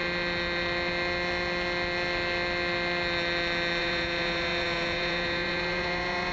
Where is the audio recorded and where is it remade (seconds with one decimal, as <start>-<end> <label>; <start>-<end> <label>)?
0.0-3.8 recorded; 3.8-6.3 remade